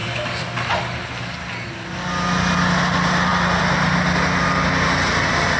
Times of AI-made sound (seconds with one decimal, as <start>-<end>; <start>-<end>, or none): none